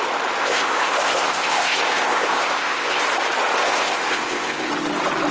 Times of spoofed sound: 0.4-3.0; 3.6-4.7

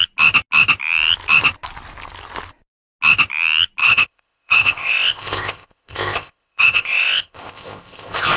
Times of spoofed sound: 3.8-8.4

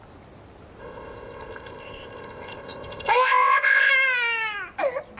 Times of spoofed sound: 0.8-3.9

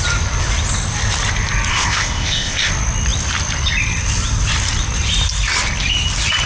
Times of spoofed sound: 1.7-2.7

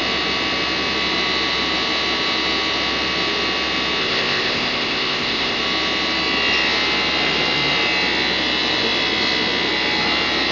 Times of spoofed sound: 4.0-5.6

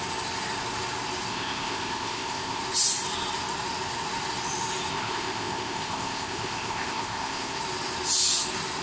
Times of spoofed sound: 1.3-2.6; 4.9-7.6

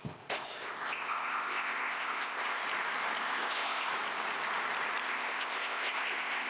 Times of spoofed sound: 0.0-2.6; 3.2-3.9; 5.0-6.5

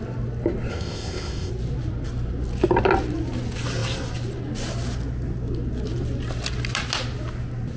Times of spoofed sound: 0.7-1.5